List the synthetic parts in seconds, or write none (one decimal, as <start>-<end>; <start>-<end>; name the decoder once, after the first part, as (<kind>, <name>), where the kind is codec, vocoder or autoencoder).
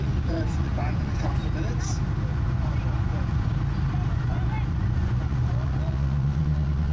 0.0-1.4 (vocoder, Vocos); 2.3-3.5; 4.1-6.9